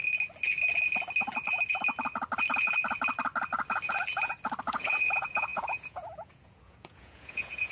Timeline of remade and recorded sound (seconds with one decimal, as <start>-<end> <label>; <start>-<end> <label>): 0.0-4.6 recorded; 4.6-7.7 remade